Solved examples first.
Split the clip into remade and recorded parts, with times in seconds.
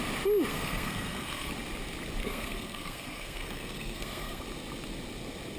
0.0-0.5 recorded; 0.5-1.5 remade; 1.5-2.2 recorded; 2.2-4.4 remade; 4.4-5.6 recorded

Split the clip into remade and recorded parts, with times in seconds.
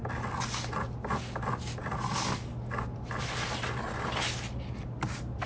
0.0-5.5 recorded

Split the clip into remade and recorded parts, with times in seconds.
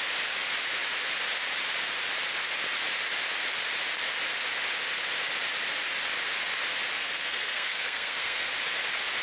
0.0-7.0 recorded; 7.0-8.5 remade; 8.5-9.2 recorded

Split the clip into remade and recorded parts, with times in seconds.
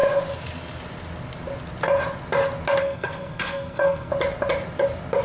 0.0-2.8 recorded; 2.8-4.1 remade; 4.1-5.2 recorded